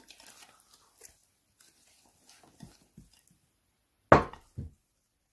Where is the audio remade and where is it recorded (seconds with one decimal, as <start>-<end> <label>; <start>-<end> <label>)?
0.0-5.3 recorded